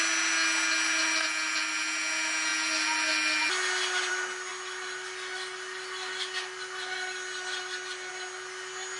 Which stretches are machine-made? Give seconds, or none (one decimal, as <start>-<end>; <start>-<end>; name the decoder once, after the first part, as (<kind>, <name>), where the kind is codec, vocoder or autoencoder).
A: none